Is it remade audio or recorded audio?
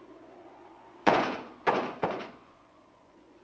remade